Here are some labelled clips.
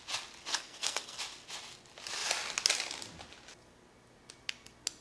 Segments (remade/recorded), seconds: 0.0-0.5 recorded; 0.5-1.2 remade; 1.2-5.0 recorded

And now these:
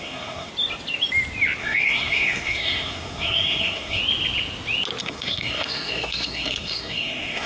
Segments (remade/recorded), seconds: 0.0-0.5 remade; 0.5-1.6 recorded; 1.6-4.0 remade; 4.0-5.0 recorded; 5.0-7.5 remade

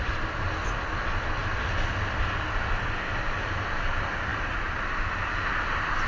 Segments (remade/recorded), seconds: 0.0-6.1 recorded

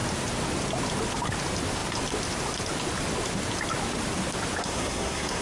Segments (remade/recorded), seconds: 0.0-4.6 recorded; 4.6-5.4 remade

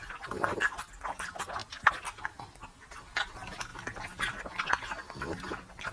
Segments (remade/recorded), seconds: 0.0-5.9 recorded

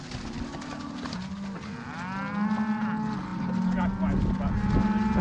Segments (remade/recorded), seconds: 0.0-5.2 recorded

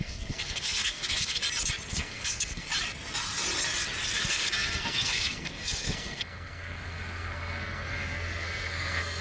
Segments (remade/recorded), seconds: 0.0-1.4 remade; 1.4-1.9 recorded; 1.9-2.7 remade; 2.7-4.2 recorded; 4.2-9.2 remade

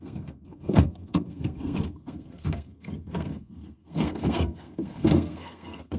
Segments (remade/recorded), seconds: 0.0-6.0 remade